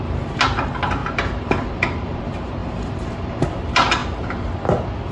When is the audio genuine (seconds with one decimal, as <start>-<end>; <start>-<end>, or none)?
0.0-1.0; 2.2-2.6; 3.4-5.1